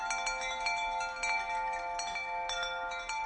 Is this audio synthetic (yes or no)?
no